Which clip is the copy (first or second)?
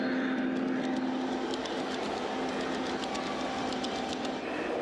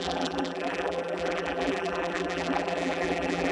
second